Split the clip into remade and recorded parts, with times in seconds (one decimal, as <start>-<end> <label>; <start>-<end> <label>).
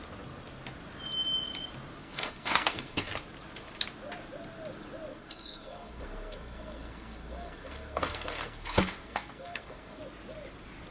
0.0-2.0 recorded; 2.0-3.1 remade; 3.1-5.1 recorded; 5.1-10.0 remade; 10.0-10.9 recorded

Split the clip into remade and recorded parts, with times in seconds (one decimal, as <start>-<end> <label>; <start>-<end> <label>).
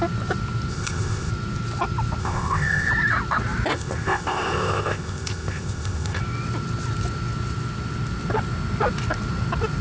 0.0-0.7 recorded; 0.7-1.3 remade; 1.3-2.2 recorded; 2.2-2.9 remade; 2.9-3.7 recorded; 3.7-6.2 remade; 6.2-9.8 recorded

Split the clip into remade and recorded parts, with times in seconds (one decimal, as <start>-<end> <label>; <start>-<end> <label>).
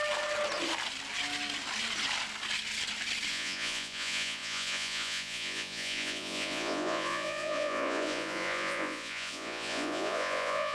0.0-3.3 recorded; 3.3-10.7 remade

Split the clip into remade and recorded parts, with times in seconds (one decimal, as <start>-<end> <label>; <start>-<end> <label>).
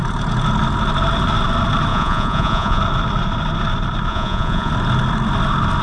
0.0-1.9 recorded; 1.9-2.8 remade; 2.8-4.1 recorded; 4.1-4.7 remade; 4.7-5.8 recorded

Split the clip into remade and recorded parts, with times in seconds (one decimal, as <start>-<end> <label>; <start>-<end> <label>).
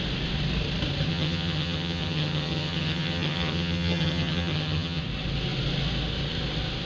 0.0-1.1 recorded; 1.1-5.0 remade; 5.0-6.8 recorded